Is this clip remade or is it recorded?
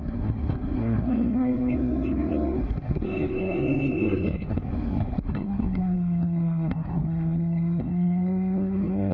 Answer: remade